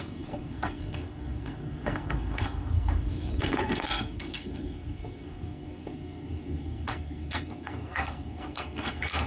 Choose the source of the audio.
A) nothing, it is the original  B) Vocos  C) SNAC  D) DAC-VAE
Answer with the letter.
C